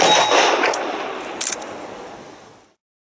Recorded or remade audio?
recorded